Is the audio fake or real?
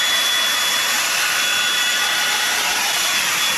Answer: real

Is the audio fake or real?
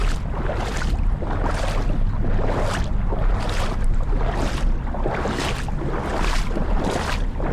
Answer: real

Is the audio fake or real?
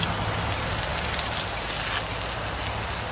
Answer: real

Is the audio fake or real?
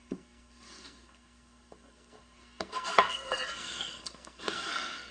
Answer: fake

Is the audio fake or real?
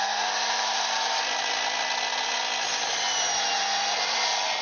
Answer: real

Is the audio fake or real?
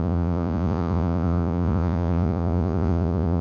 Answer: fake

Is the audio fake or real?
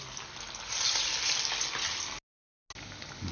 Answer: real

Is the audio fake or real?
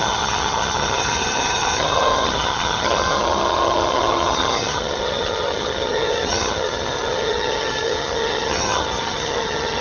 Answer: fake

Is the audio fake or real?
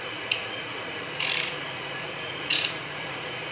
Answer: fake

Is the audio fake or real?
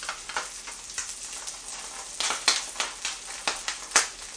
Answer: real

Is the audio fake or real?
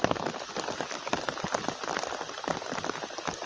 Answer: real